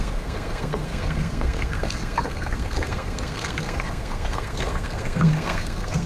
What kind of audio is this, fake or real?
fake